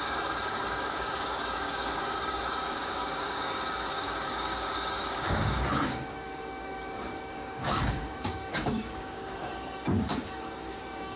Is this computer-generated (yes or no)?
yes